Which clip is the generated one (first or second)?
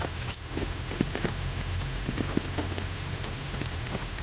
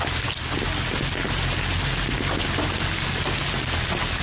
first